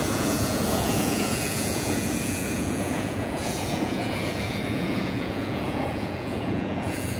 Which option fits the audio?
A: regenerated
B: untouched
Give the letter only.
A